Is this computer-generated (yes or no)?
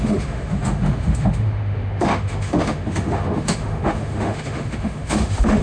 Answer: yes